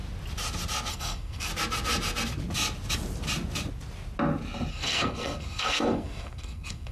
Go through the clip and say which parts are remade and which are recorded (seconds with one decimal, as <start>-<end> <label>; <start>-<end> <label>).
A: 0.0-0.9 recorded; 0.9-1.5 remade; 1.5-4.7 recorded; 4.7-6.9 remade